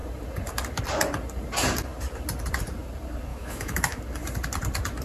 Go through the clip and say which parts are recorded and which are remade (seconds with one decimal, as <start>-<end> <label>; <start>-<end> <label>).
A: 0.0-3.3 recorded; 3.3-4.0 remade; 4.0-5.0 recorded

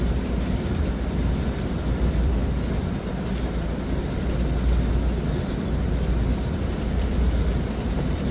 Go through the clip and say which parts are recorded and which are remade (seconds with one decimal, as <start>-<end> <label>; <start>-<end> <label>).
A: 0.0-2.4 remade; 2.4-6.5 recorded; 6.5-8.3 remade

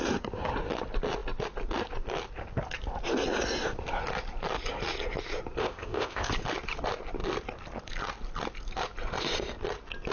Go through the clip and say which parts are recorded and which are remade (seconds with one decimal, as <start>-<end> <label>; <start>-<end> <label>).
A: 0.0-5.6 recorded; 5.6-6.3 remade; 6.3-10.1 recorded

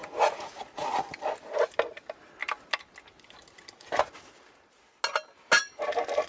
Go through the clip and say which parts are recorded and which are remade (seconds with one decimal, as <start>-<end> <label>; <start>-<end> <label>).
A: 0.0-1.0 remade; 1.0-6.3 recorded

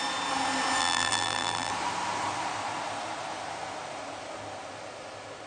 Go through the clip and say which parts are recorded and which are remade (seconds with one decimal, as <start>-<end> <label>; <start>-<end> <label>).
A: 0.0-0.8 recorded; 0.8-1.7 remade; 1.7-5.5 recorded

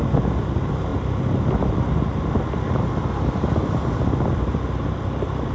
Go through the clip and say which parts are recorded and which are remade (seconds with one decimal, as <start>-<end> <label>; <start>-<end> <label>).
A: 0.0-5.5 recorded